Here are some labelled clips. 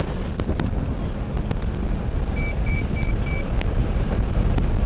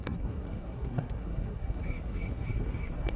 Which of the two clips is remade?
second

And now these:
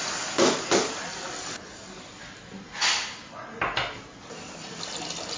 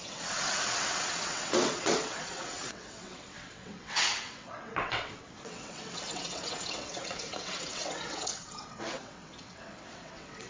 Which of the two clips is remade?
second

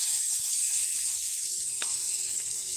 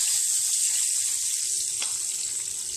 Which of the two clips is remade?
first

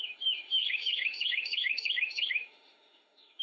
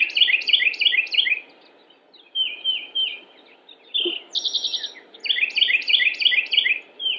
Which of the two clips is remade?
first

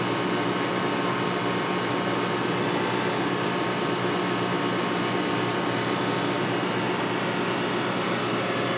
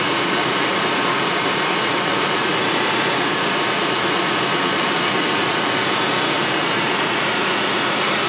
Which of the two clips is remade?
second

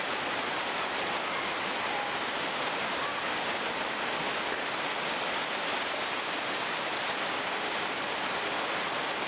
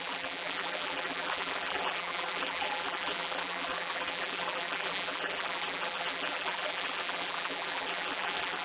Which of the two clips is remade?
second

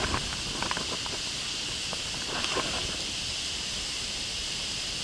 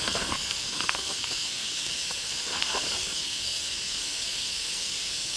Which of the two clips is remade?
second